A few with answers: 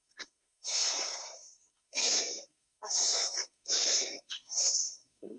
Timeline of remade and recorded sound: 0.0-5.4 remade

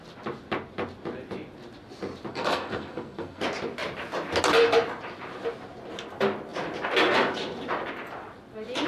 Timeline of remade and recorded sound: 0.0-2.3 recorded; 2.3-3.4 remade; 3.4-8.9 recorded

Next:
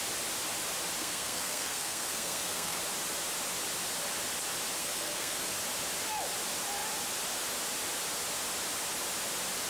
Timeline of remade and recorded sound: 0.0-1.0 recorded; 1.0-2.8 remade; 2.8-4.8 recorded; 4.8-5.5 remade; 5.5-9.7 recorded